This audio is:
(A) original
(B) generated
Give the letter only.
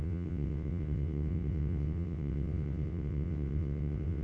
B